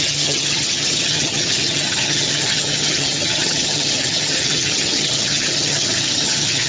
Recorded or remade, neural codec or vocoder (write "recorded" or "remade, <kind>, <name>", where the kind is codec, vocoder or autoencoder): remade, vocoder, HiFi-GAN